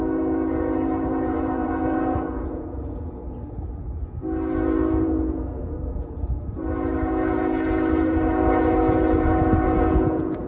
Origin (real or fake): fake